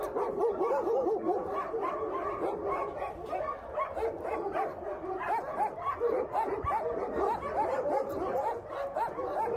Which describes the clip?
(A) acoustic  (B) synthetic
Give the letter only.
A